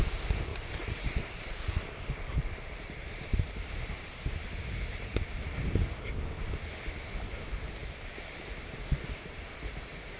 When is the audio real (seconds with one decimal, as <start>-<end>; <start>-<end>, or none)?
0.0-0.5; 1.8-2.3; 4.1-10.2